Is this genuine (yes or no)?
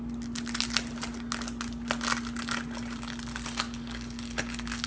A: yes